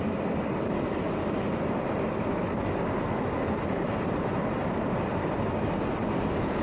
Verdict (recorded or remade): recorded